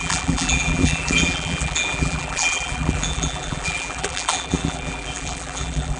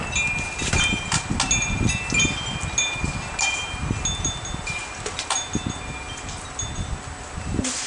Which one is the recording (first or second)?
second